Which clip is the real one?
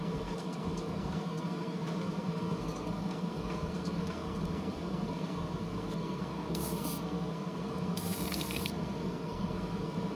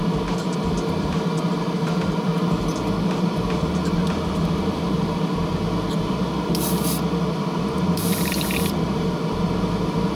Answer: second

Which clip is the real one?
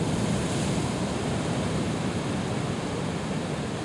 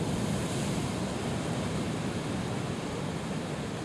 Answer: second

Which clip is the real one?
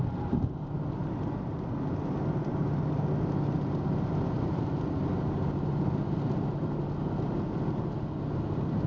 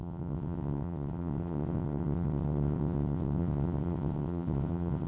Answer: first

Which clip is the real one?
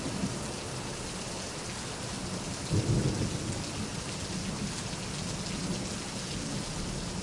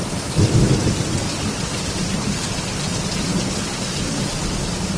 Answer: first